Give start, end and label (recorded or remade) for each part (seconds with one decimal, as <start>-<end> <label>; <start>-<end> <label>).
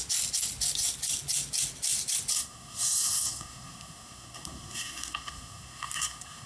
0.0-2.3 recorded; 2.3-6.5 remade